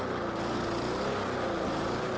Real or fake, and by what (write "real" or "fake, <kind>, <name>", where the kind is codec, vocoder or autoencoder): real